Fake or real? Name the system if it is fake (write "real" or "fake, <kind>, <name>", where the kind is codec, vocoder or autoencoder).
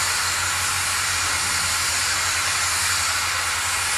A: real